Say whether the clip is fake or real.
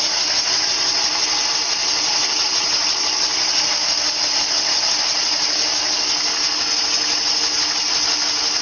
real